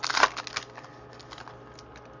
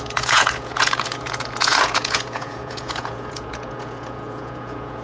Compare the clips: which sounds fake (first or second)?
second